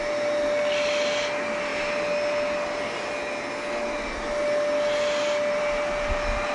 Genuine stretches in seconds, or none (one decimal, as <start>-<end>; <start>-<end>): 0.0-6.5